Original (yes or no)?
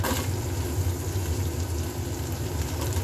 yes